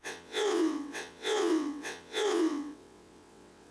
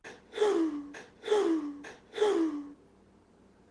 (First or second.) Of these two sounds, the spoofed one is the first